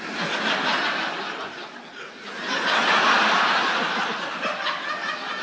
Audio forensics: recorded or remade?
recorded